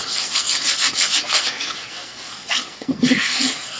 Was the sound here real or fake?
fake